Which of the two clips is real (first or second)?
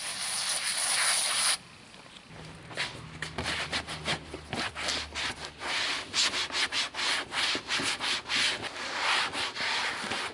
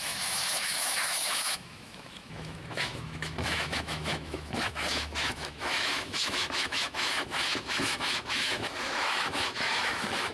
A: first